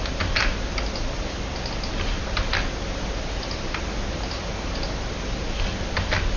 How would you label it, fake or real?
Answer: real